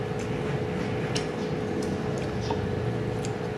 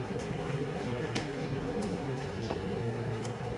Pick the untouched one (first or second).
first